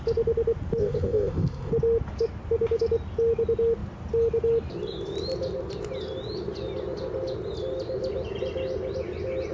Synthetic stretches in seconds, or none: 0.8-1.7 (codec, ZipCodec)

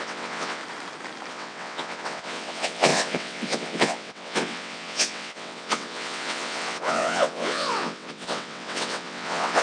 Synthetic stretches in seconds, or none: 0.0-0.6 (vocoder, WaveNeXt); 1.3-9.6

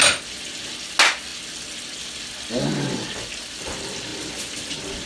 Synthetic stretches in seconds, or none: none

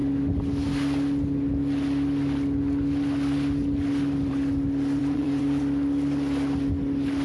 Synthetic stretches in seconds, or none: 5.0-5.6 (vocoder, Vocos)

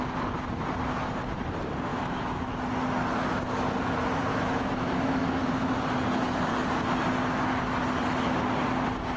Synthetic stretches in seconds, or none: 1.9-2.4 (autoencoder, DAC-VAE); 4.3-5.5

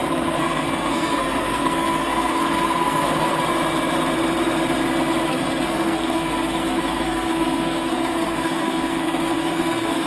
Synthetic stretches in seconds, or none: 0.0-3.4 (codec, SNAC); 5.3-10.1

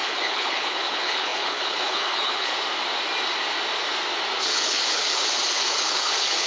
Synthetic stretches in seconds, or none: 0.0-2.5 (codec, HILCodec); 4.4-6.5

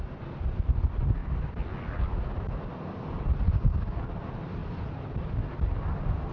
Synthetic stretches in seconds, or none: none